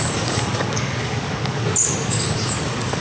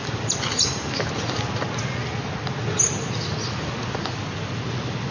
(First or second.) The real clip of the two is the second